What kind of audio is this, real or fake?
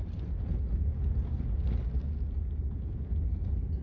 real